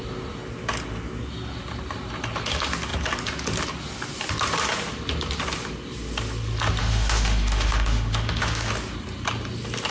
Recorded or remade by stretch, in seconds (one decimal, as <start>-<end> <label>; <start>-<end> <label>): 0.0-6.8 recorded; 6.8-8.7 remade; 8.7-9.9 recorded